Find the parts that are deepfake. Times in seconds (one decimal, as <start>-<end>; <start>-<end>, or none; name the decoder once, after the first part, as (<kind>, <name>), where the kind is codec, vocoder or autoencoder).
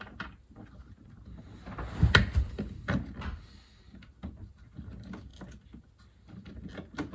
none